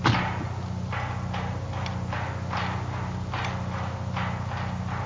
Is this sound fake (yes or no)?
no